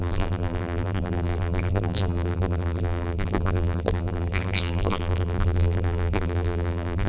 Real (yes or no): no